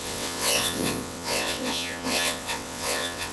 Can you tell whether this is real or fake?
fake